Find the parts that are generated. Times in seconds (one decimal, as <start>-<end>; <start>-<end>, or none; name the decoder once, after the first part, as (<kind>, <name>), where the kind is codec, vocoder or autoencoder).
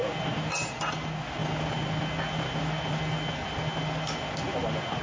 none